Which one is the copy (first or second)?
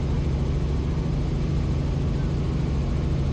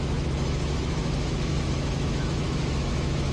second